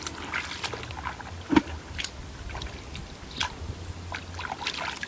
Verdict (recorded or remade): recorded